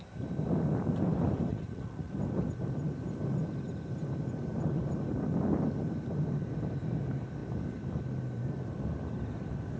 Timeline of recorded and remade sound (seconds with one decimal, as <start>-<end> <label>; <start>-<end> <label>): 0.0-1.5 recorded; 1.5-2.1 remade; 2.1-9.8 recorded